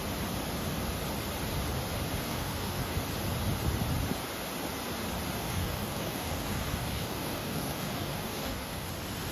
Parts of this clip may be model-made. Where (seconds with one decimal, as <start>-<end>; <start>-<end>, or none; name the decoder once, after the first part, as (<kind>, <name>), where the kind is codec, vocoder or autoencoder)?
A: 2.2-2.9 (codec, DAC); 5.4-8.9